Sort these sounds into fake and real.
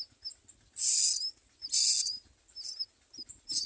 real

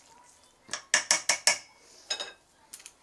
real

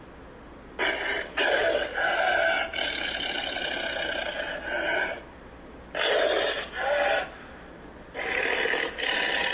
real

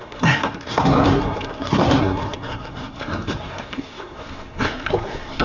fake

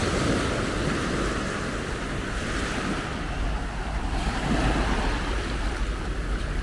real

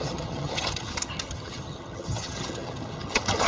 fake